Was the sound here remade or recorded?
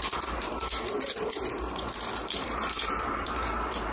remade